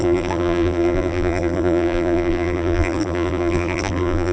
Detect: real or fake fake